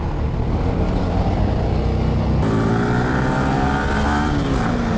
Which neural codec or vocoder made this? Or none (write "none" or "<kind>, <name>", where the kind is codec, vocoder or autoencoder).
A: none